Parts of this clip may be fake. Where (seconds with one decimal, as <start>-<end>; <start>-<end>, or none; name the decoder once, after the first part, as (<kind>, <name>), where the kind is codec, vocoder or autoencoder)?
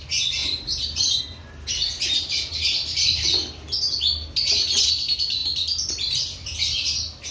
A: 0.4-1.2 (vocoder, BigVGAN v2)